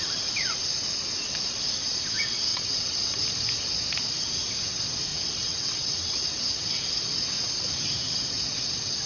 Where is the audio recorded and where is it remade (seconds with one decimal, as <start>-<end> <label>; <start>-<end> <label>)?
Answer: 0.0-2.5 recorded; 2.5-3.2 remade; 3.2-5.1 recorded; 5.1-6.8 remade; 6.8-9.1 recorded